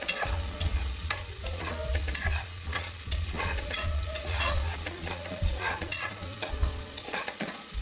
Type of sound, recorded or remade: remade